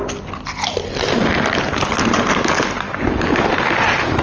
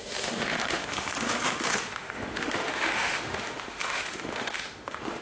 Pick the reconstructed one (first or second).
second